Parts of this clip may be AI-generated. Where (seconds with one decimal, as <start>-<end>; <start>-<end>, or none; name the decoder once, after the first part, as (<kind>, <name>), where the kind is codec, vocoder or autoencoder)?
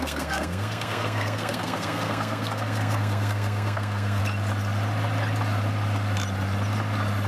0.0-4.2 (codec, SNAC)